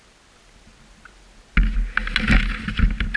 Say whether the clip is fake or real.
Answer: real